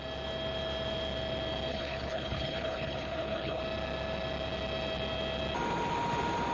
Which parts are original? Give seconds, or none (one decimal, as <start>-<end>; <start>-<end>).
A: 0.0-1.7; 3.6-6.5